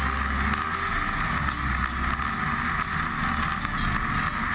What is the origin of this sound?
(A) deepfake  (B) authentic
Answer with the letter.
B